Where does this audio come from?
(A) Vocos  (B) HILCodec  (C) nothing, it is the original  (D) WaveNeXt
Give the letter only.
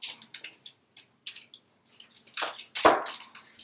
C